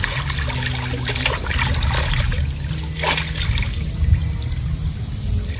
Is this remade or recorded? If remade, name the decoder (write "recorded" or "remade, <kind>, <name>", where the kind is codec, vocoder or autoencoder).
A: recorded